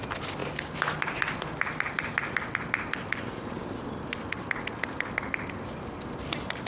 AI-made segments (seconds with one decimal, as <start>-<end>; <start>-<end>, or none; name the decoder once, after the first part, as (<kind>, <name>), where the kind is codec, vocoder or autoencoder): none